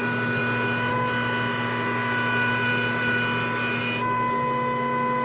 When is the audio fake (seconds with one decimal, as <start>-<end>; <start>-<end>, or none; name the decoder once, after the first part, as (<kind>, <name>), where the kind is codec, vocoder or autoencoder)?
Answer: none